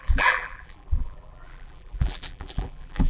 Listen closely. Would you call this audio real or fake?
fake